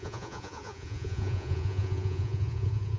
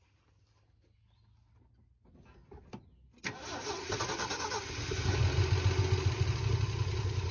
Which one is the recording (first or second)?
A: second